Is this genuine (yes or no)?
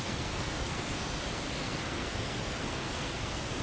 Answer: no